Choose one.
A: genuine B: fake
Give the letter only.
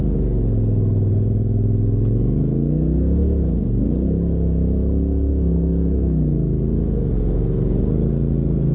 A